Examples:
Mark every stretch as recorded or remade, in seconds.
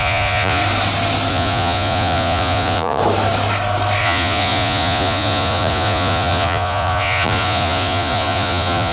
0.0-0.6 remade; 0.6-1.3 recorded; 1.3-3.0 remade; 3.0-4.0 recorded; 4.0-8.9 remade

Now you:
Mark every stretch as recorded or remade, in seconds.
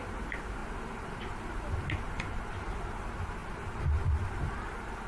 0.0-5.1 recorded